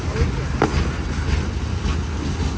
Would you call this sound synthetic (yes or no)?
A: no